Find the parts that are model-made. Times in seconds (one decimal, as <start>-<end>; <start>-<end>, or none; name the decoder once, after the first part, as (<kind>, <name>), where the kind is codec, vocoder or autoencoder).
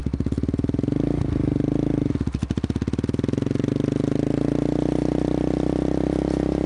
none